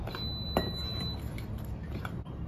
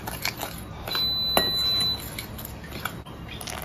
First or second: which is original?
second